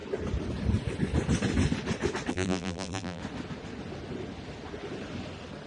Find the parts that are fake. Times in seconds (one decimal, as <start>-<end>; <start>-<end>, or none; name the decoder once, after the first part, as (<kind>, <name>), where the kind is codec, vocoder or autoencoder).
2.3-3.2 (vocoder, BigVGAN v2)